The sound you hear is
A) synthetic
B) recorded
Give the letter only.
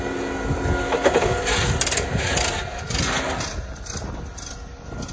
B